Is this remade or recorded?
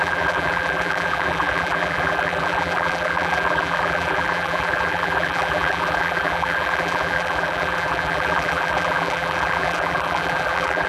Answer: remade